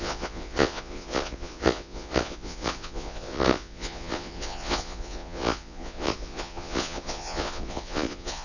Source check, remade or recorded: remade